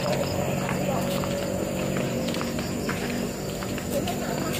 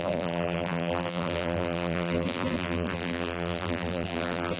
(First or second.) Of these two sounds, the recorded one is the first